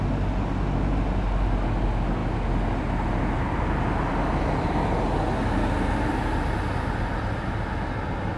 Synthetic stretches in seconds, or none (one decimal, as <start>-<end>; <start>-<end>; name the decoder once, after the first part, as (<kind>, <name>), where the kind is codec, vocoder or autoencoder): none